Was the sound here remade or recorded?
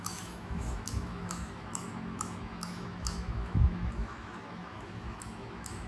remade